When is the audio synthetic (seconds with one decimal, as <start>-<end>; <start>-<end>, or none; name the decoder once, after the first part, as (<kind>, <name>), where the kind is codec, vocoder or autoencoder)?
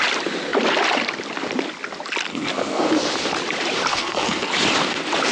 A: 2.3-2.9 (codec, SNAC); 3.9-4.5